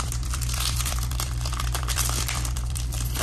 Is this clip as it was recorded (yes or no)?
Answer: no